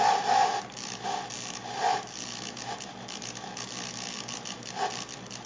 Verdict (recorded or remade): recorded